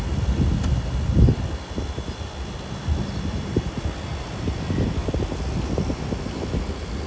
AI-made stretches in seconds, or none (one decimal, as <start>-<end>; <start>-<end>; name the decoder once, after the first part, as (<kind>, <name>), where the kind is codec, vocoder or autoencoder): none